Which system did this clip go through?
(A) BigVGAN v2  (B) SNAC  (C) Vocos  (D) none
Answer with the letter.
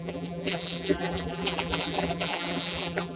A